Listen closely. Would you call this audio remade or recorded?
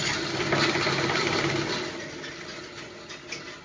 recorded